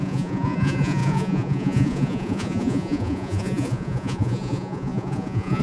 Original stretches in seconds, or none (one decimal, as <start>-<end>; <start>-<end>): none